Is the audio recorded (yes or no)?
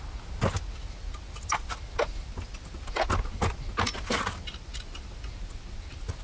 yes